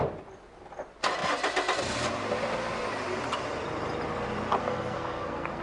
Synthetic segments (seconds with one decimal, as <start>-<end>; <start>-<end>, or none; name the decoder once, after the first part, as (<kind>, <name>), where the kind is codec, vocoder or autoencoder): 4.6-5.6 (codec, SNAC)